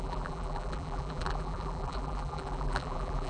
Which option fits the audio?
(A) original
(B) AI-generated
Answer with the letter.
B